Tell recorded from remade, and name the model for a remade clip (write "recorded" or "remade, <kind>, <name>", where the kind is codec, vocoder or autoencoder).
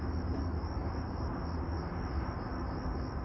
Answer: recorded